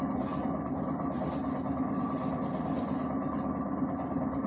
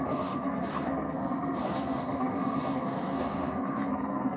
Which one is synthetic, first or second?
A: second